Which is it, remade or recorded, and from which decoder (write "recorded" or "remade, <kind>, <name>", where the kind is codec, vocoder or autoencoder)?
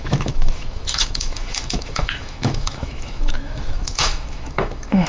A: remade, autoencoder, DAC-VAE